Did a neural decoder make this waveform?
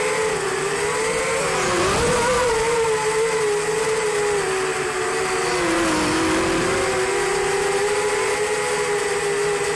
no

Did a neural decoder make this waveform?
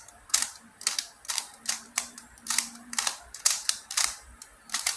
yes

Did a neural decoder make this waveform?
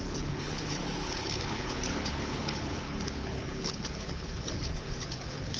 yes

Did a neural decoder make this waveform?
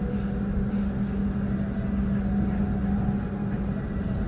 no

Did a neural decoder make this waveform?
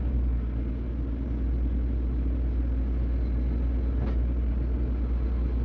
no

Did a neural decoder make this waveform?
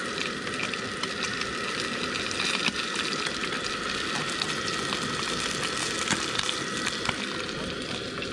no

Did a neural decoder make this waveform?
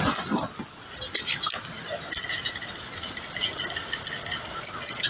no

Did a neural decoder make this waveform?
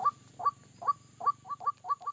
no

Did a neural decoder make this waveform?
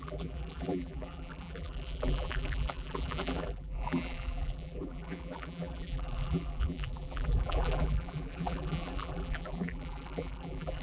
yes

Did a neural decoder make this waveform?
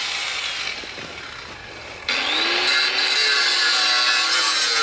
no